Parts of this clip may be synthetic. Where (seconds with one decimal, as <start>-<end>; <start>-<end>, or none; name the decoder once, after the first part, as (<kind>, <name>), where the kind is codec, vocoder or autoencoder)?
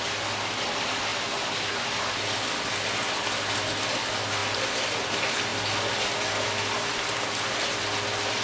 none